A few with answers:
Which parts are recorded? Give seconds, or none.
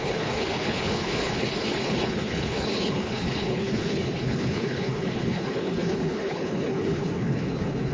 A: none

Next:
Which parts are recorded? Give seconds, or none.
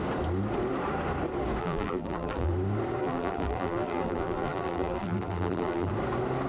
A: 0.0-1.6; 2.5-3.0; 5.9-6.5